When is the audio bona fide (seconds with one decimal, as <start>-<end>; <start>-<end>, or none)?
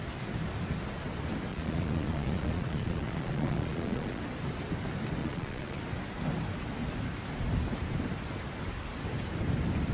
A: 0.0-1.5; 4.2-5.2; 5.8-9.9